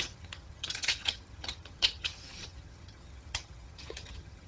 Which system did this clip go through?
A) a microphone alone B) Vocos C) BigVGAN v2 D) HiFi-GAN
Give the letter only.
D